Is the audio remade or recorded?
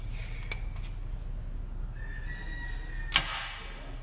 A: recorded